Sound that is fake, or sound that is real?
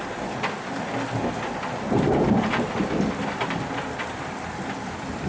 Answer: real